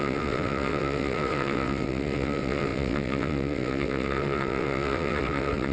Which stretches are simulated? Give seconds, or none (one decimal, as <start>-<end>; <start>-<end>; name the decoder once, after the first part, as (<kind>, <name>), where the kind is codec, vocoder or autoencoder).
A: 0.0-5.7 (vocoder, WaveNeXt)